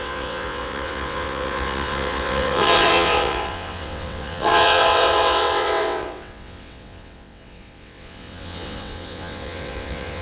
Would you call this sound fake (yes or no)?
yes